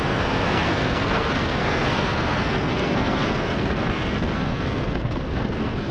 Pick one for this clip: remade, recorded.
remade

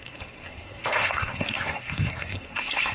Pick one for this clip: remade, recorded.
remade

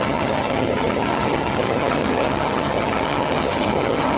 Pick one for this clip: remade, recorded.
remade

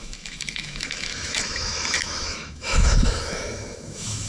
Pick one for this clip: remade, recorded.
remade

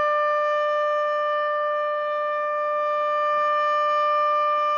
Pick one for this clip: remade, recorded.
recorded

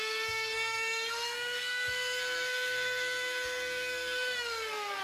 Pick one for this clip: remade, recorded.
remade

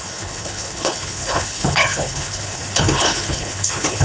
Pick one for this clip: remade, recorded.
remade